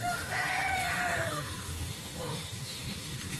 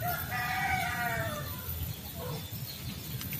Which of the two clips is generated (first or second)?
first